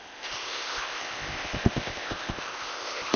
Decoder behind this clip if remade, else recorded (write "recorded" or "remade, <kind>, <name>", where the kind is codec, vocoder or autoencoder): remade, codec, ZipCodec